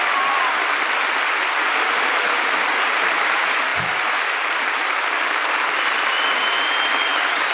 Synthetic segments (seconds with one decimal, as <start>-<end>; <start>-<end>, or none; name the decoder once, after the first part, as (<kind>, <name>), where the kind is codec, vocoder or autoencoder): none